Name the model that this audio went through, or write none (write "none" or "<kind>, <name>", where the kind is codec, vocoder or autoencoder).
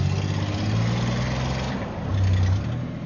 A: none